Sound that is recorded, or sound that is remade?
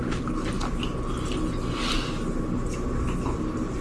recorded